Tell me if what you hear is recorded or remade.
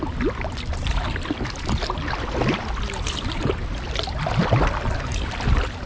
recorded